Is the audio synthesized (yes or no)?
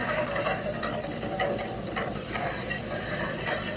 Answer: no